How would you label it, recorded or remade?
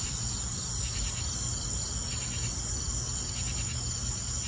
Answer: recorded